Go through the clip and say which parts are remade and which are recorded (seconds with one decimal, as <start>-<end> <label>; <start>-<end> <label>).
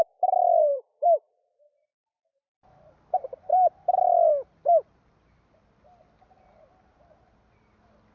0.0-0.7 recorded; 0.7-1.7 remade; 1.7-8.1 recorded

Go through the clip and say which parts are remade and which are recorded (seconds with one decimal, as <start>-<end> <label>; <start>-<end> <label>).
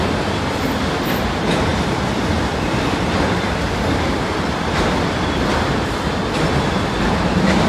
0.0-1.7 recorded; 1.7-6.2 remade; 6.2-7.7 recorded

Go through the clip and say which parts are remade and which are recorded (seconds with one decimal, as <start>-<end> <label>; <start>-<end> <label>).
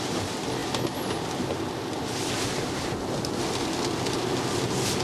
0.0-5.0 recorded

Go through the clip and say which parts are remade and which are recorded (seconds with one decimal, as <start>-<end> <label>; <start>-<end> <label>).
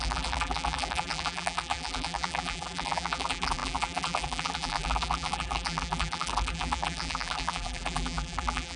0.0-8.8 remade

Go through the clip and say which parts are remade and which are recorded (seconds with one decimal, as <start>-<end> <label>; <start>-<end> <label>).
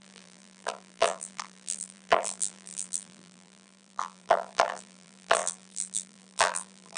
0.0-7.0 remade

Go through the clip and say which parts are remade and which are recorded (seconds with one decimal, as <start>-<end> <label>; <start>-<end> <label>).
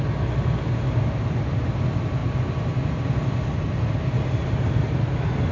0.0-2.2 recorded; 2.2-5.1 remade; 5.1-5.5 recorded